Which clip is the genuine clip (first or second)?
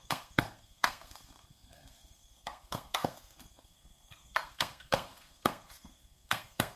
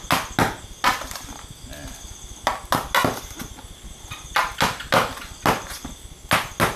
second